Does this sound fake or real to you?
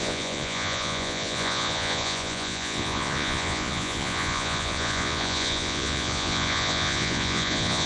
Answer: fake